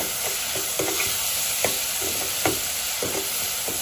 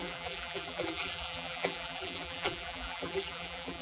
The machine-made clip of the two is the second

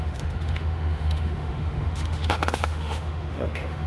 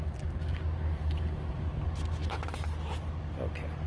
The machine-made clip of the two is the first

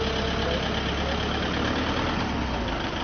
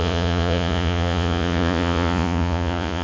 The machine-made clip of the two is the second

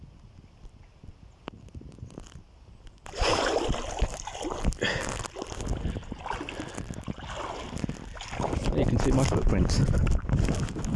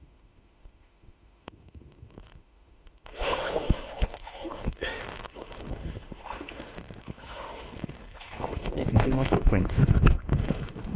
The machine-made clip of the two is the second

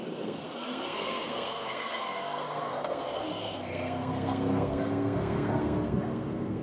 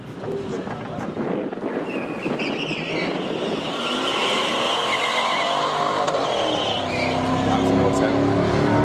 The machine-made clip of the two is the first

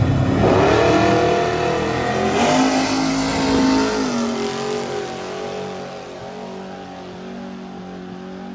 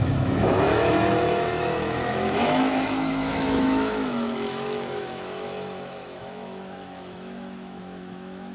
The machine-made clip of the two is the second